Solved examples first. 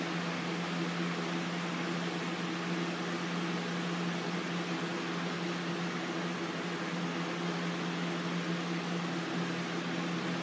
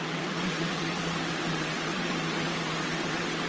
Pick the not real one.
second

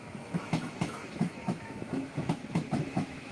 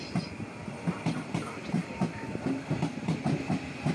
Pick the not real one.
first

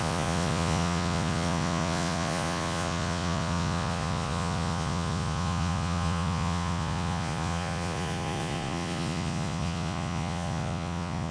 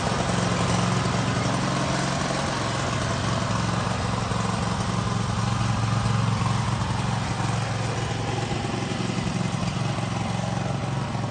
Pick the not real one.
first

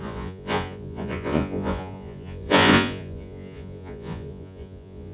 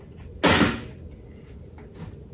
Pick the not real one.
first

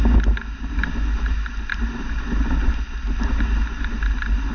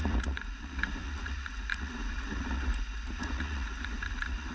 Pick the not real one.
second